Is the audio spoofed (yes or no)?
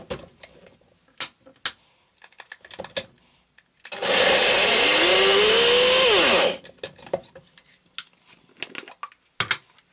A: no